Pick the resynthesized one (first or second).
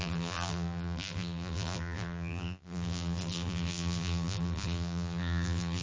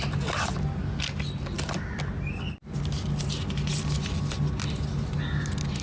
first